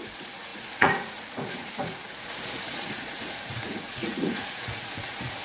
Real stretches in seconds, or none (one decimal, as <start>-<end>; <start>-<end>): none